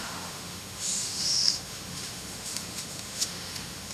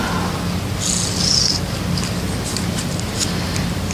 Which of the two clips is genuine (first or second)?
second